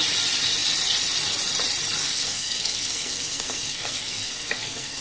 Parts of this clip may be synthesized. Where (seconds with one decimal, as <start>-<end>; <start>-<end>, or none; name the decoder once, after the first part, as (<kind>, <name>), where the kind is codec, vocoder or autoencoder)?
2.0-5.0 (codec, SNAC)